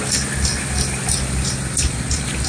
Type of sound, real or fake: real